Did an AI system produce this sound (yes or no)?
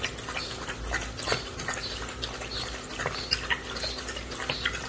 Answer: no